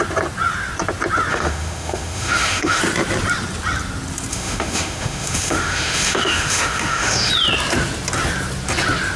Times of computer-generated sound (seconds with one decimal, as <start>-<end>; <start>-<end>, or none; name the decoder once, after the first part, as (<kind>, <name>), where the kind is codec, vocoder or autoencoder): 1.3-2.8 (autoencoder, DAC-VAE); 4.3-7.3